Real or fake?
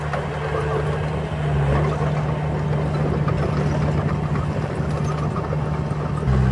real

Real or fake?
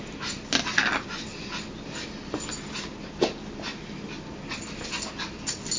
real